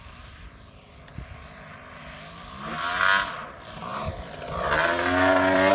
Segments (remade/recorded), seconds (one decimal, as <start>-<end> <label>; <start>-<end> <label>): 0.0-5.7 recorded